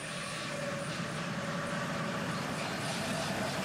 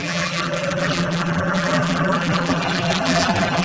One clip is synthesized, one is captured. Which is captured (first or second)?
first